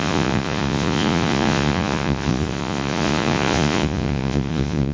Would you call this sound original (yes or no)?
no